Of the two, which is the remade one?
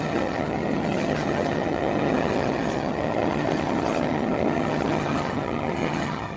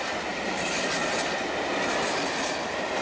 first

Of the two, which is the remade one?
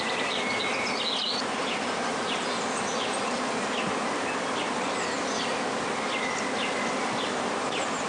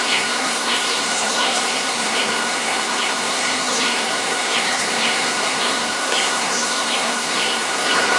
second